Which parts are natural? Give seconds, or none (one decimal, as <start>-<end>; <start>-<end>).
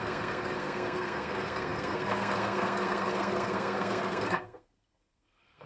none